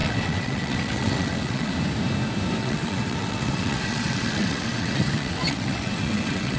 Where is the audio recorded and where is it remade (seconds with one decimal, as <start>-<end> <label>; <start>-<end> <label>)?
0.0-1.7 remade; 1.7-2.6 recorded; 2.6-6.6 remade